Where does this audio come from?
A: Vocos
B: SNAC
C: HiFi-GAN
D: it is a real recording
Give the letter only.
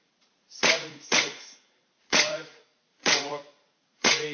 A